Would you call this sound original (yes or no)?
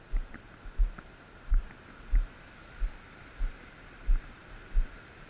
yes